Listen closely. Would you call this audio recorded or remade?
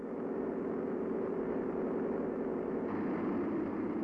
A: recorded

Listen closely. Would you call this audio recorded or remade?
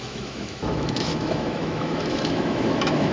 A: remade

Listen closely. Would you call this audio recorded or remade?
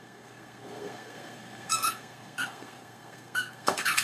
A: remade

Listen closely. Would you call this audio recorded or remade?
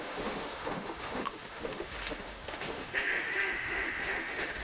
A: remade